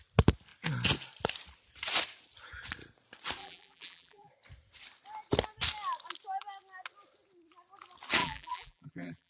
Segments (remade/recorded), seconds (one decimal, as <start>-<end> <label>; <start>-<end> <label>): 0.0-3.4 recorded; 3.4-4.3 remade; 4.3-8.2 recorded; 8.2-9.3 remade